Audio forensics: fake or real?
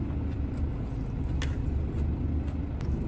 real